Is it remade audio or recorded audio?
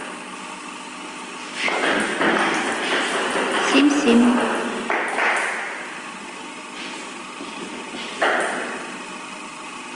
recorded